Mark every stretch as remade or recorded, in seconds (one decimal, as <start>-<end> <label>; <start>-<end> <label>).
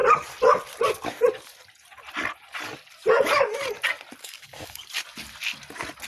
0.0-4.2 recorded; 4.2-4.9 remade; 4.9-6.1 recorded